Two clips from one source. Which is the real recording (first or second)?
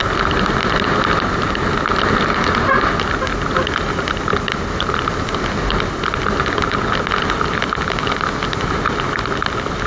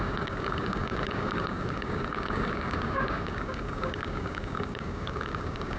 first